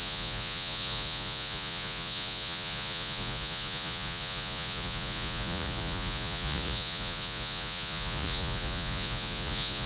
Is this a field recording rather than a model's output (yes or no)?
no